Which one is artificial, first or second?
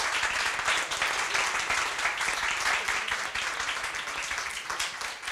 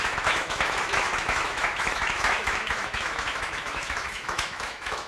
second